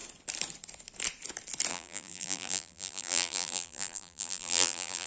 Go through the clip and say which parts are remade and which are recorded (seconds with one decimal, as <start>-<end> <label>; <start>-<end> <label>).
0.0-1.7 recorded; 1.7-5.1 remade